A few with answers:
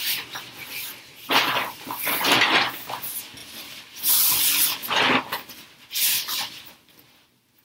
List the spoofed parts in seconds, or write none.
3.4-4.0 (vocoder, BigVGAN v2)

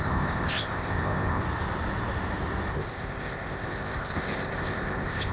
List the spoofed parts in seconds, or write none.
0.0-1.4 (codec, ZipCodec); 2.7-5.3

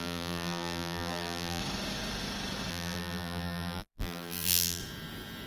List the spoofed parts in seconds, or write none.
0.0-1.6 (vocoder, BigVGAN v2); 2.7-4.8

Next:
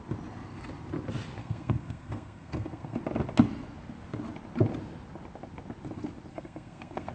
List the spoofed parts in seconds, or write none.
1.4-3.0 (codec, SNAC); 6.3-7.1

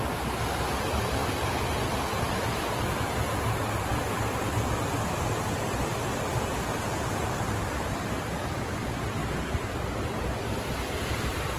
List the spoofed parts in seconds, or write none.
9.2-11.6 (vocoder, BigVGAN v2)

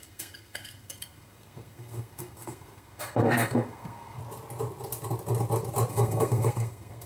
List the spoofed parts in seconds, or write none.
0.0-4.2 (codec, SNAC); 5.9-7.1